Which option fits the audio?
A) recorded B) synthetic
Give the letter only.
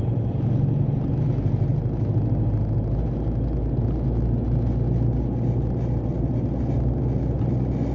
A